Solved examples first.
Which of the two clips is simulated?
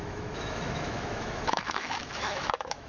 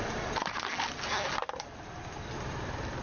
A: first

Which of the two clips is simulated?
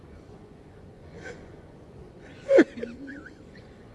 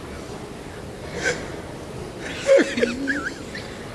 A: first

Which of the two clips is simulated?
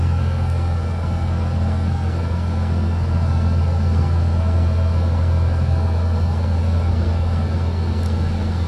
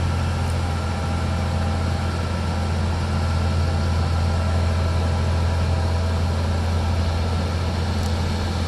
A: first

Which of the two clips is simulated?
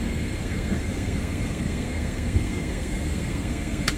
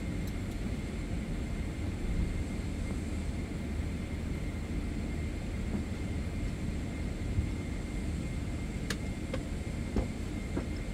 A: first